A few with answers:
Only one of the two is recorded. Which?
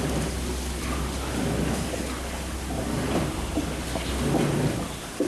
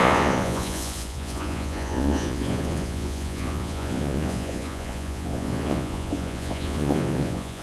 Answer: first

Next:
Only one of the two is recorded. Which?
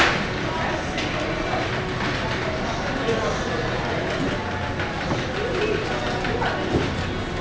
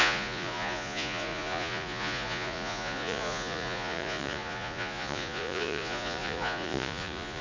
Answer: first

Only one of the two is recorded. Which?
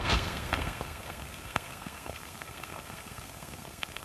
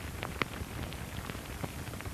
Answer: second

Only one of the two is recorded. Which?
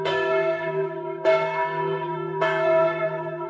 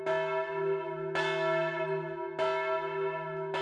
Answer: second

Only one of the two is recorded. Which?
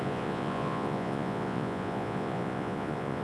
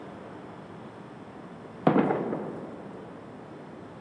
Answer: second